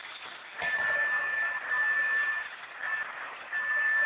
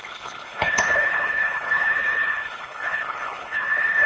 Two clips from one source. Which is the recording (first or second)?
first